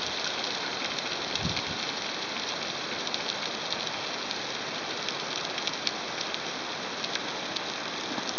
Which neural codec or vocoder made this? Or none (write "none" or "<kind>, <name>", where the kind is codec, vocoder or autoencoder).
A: none